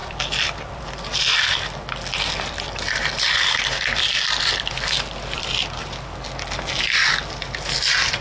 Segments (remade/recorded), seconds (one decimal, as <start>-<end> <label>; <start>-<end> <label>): 0.0-0.8 remade; 0.8-1.3 recorded; 1.3-5.5 remade; 5.5-8.2 recorded